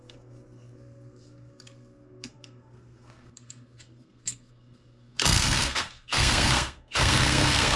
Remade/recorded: remade